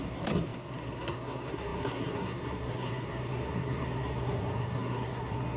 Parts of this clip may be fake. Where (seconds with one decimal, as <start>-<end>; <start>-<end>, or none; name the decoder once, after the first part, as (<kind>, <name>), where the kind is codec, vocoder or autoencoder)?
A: 0.0-5.6 (codec, SNAC)